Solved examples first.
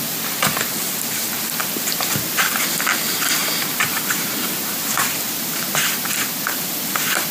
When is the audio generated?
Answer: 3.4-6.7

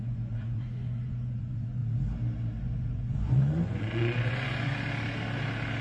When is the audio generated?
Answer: 0.0-1.8; 2.6-4.7

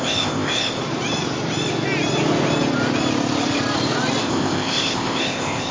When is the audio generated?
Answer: 0.0-0.8; 4.2-5.7

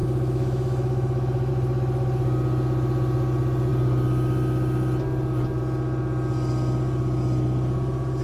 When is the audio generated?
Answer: 0.0-1.5

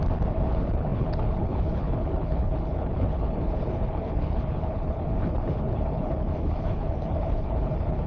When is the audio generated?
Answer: 0.5-8.1

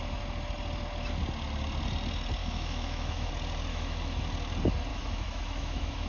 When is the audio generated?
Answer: 2.4-3.3; 3.7-4.3; 4.9-6.1

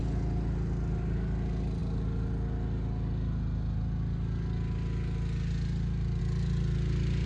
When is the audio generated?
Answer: none

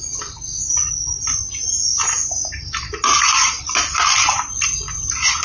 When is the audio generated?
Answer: none